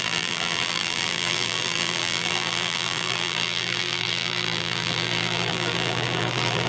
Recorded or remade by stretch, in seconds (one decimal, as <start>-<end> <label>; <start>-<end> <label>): 0.0-6.7 remade